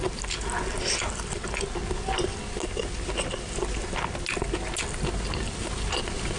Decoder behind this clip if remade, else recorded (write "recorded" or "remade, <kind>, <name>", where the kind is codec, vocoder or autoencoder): recorded